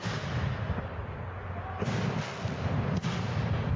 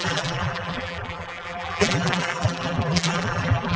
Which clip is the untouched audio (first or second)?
first